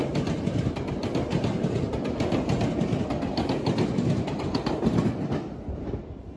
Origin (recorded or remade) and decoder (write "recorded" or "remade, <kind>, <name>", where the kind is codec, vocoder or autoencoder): recorded